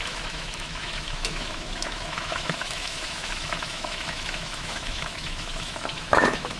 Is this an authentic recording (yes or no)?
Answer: no